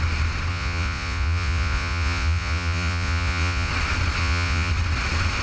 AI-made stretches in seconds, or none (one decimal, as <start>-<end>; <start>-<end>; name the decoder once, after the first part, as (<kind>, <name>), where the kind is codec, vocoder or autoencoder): 0.5-3.7 (vocoder, Vocos); 4.2-4.7